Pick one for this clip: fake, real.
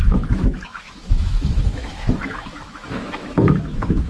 fake